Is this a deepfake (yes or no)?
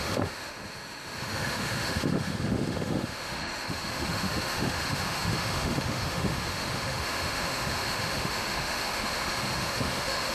yes